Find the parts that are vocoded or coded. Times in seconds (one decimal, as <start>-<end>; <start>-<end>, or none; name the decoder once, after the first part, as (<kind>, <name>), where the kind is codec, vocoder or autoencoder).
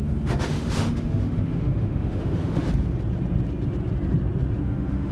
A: 0.0-2.6 (autoencoder, DAC-VAE); 4.6-5.1